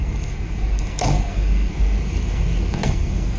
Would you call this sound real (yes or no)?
no